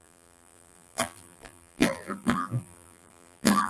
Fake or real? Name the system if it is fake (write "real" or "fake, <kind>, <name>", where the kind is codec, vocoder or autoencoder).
fake, vocoder, BigVGAN v2